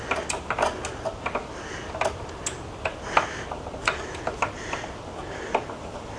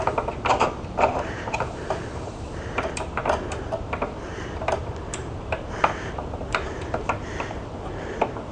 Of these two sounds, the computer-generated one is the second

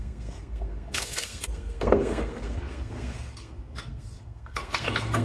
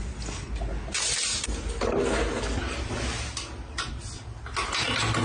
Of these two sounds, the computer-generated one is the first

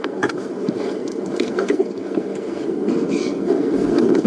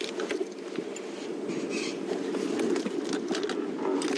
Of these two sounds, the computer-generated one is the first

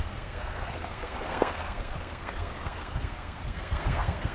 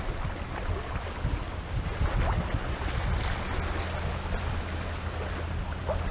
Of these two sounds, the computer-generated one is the first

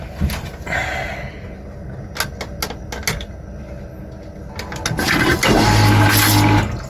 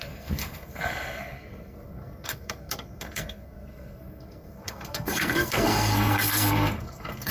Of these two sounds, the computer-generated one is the second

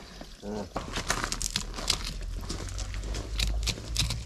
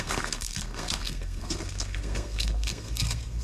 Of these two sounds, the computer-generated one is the second